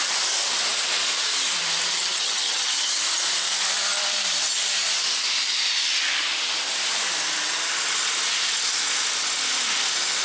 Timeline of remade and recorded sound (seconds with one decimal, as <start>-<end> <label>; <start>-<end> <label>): 0.0-1.9 recorded; 1.9-3.0 remade; 3.0-10.2 recorded